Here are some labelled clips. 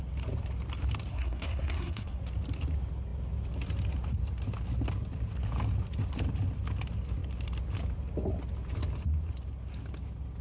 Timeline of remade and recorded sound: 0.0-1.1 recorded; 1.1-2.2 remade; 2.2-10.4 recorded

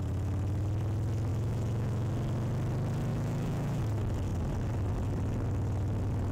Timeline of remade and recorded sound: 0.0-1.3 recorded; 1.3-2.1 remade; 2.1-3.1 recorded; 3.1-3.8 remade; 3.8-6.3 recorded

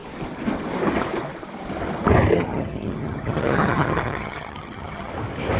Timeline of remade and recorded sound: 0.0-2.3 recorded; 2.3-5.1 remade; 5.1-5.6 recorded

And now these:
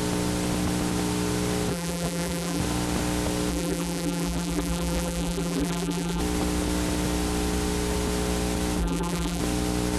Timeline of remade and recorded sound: 0.0-1.7 recorded; 1.7-2.6 remade; 2.6-3.5 recorded; 3.5-6.2 remade; 6.2-8.8 recorded; 8.8-9.4 remade; 9.4-10.0 recorded